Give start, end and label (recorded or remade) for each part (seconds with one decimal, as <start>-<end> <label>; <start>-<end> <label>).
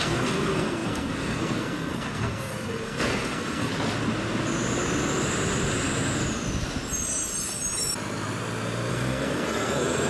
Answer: 0.0-3.7 remade; 3.7-8.9 recorded; 8.9-10.1 remade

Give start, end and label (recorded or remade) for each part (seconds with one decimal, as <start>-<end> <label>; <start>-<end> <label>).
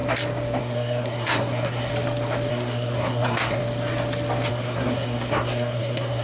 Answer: 0.0-0.6 recorded; 0.6-1.9 remade; 1.9-2.5 recorded; 2.5-3.6 remade; 3.6-4.5 recorded; 4.5-6.2 remade